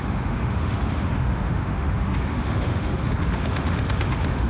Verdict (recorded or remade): remade